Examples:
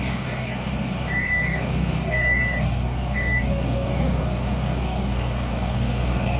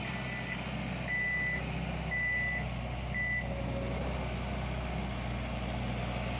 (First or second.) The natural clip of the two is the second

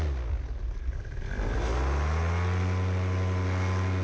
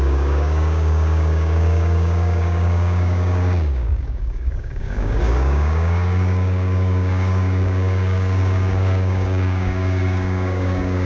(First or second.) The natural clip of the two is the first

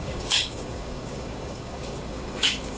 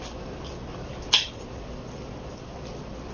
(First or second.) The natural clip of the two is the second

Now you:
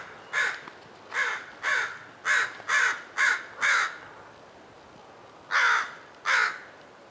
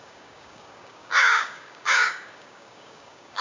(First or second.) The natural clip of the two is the first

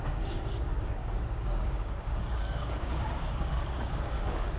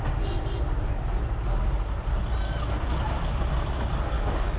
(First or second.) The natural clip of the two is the second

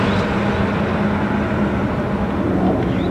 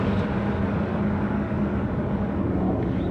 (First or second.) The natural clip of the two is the first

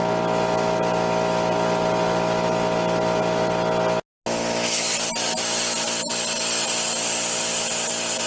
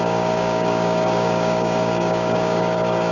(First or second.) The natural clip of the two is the first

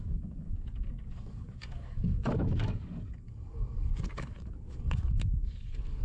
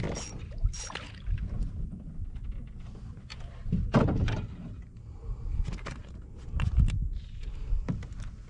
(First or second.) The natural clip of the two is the second